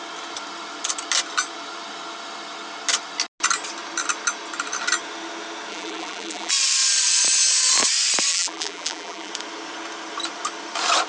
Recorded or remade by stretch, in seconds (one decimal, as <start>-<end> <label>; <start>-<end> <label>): 0.0-5.7 recorded; 5.7-6.5 remade; 6.5-8.3 recorded; 8.3-9.3 remade; 9.3-11.1 recorded